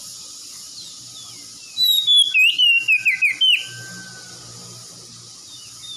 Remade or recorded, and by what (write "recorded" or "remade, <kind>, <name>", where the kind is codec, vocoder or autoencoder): recorded